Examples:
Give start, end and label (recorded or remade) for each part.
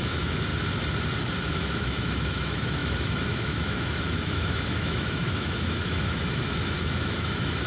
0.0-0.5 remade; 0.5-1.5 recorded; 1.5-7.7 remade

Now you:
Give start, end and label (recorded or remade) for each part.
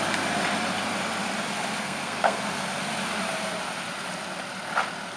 0.0-1.8 recorded; 1.8-2.4 remade; 2.4-5.2 recorded